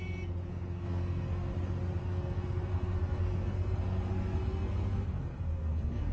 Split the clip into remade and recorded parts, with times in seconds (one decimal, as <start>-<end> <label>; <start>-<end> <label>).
0.0-0.5 recorded; 0.5-1.5 remade; 1.5-2.0 recorded; 2.0-6.1 remade